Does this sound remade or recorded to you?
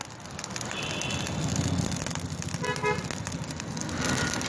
recorded